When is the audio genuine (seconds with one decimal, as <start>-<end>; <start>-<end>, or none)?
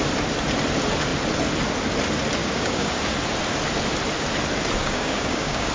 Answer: 0.0-2.4; 2.9-4.8